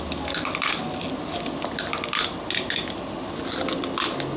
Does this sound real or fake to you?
real